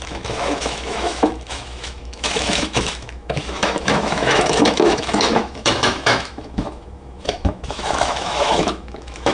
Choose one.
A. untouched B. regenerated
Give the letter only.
B